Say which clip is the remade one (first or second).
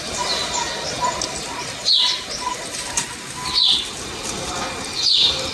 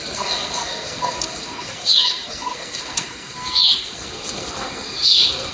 second